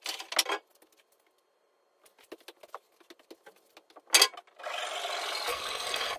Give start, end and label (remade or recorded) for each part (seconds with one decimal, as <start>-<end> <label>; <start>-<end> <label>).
0.0-5.5 recorded; 5.5-6.2 remade